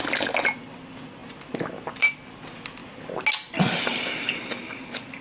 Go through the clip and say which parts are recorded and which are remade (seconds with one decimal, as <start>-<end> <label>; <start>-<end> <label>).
0.0-5.2 recorded

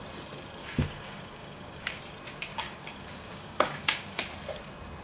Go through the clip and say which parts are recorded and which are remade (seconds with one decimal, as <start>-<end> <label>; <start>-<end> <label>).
0.0-0.6 recorded; 0.6-2.0 remade; 2.0-2.5 recorded; 2.5-4.2 remade; 4.2-5.0 recorded

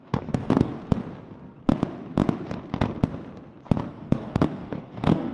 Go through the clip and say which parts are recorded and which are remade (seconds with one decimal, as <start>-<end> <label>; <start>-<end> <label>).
0.0-0.7 remade; 0.7-3.9 recorded; 3.9-5.3 remade

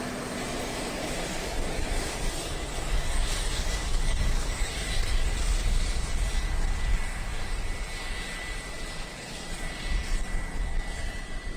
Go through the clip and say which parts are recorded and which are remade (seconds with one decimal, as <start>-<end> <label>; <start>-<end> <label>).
0.0-1.3 recorded; 1.3-5.3 remade; 5.3-11.6 recorded

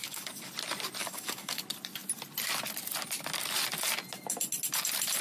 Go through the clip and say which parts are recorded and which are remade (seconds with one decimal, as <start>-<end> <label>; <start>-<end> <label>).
0.0-0.5 remade; 0.5-1.0 recorded; 1.0-1.6 remade; 1.6-5.2 recorded

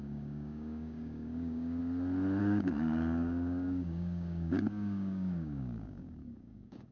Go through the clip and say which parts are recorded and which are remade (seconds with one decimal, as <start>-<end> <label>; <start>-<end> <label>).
0.0-1.8 remade; 1.8-2.4 recorded; 2.4-6.9 remade

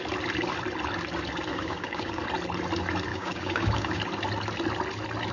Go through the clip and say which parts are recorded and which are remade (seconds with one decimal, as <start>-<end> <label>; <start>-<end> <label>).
0.0-1.5 recorded; 1.5-2.2 remade; 2.2-3.1 recorded; 3.1-4.0 remade; 4.0-5.3 recorded

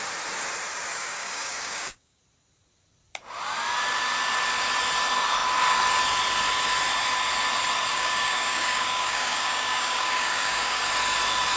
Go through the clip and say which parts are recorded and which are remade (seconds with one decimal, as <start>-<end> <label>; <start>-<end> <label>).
0.0-0.9 recorded; 0.9-2.2 remade; 2.2-7.9 recorded; 7.9-10.8 remade; 10.8-11.6 recorded